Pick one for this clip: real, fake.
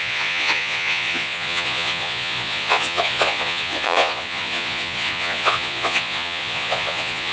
fake